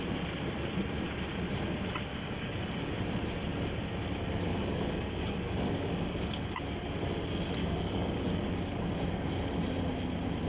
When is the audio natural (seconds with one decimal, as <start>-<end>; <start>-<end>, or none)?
0.0-2.1; 2.9-4.5; 6.6-7.6; 8.4-10.5